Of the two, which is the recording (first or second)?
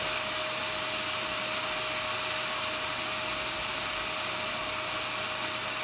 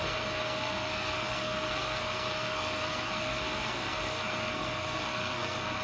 first